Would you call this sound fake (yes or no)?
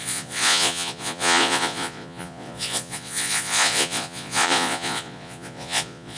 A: yes